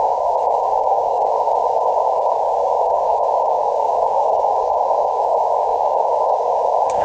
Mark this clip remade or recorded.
remade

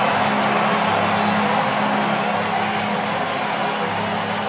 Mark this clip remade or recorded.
recorded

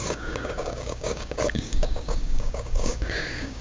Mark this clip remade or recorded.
remade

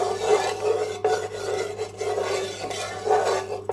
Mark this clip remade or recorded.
recorded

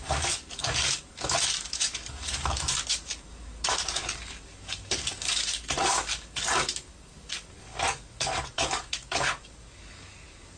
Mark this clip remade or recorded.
remade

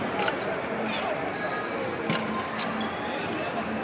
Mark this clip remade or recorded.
recorded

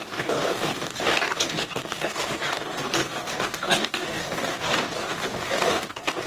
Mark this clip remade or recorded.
remade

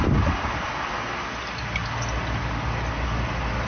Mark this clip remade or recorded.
recorded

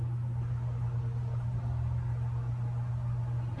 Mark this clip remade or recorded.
recorded